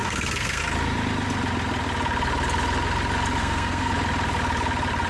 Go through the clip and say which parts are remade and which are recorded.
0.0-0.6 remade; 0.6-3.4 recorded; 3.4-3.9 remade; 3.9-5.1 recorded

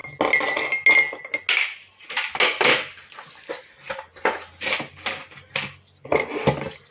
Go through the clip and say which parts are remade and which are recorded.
0.0-6.9 recorded

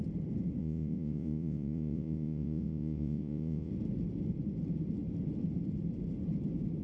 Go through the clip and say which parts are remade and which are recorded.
0.0-0.6 recorded; 0.6-3.7 remade; 3.7-6.8 recorded

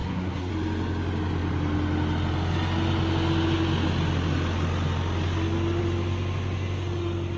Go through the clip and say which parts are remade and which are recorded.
0.0-0.5 remade; 0.5-7.4 recorded

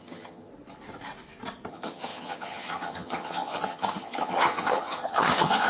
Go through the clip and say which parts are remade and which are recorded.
0.0-0.5 remade; 0.5-1.7 recorded; 1.7-5.7 remade

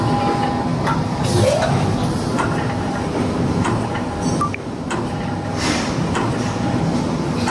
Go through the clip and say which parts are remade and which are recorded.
0.0-7.5 recorded

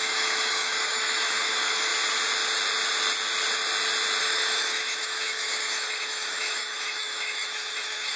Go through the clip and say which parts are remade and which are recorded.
0.0-1.9 remade; 1.9-4.2 recorded; 4.2-8.2 remade